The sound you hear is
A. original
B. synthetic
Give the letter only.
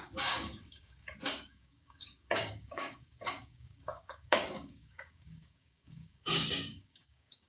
B